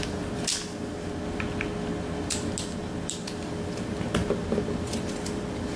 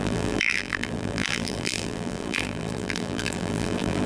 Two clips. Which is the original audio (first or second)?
first